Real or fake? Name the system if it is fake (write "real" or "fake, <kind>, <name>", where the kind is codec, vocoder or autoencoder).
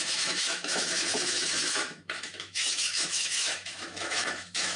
fake, autoencoder, DAC-VAE